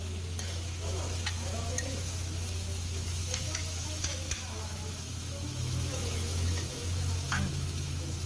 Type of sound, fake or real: fake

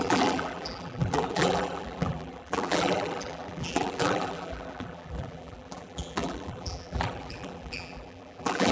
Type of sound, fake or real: fake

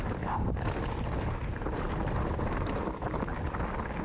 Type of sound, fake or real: real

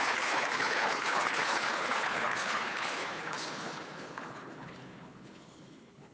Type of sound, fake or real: fake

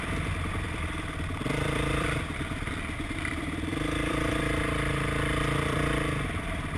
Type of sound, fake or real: fake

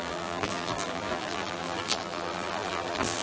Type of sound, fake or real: fake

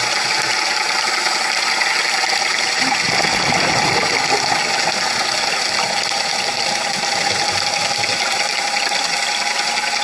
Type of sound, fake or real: real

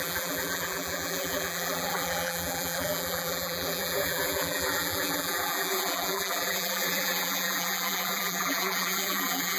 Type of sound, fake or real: fake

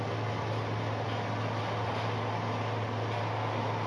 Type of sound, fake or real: real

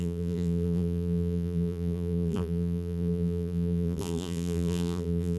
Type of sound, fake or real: fake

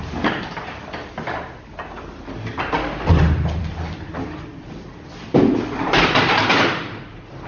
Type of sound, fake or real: fake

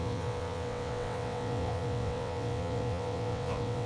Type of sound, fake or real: fake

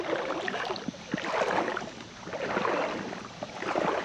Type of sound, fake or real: real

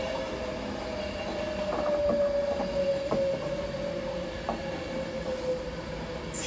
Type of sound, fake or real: real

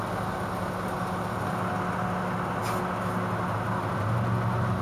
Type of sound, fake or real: real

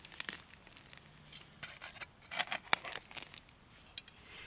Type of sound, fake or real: real